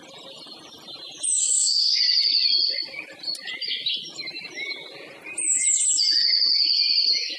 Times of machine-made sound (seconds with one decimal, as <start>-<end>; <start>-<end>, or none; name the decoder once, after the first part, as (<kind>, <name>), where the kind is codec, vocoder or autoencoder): 1.4-2.0 (codec, SNAC)